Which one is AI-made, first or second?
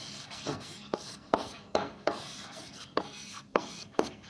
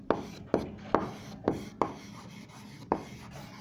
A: first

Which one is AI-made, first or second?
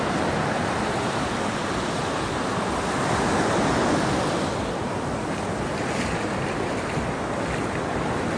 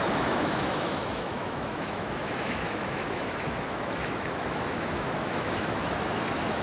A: second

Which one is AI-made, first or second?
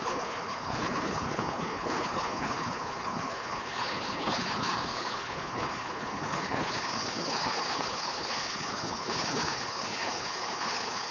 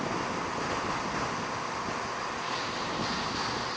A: first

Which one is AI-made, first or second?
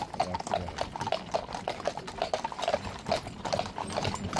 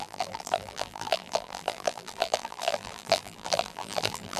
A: second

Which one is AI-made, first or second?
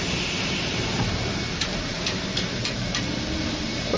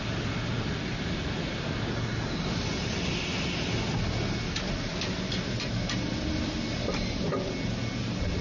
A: first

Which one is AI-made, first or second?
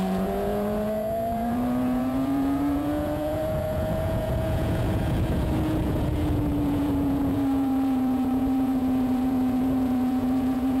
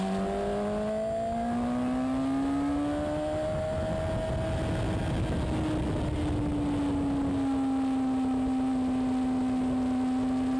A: first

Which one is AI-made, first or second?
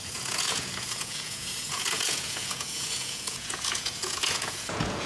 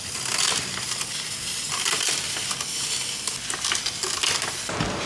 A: first